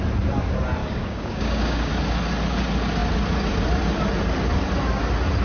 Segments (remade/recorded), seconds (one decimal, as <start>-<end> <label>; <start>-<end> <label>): 0.0-0.8 recorded; 0.8-1.9 remade; 1.9-5.4 recorded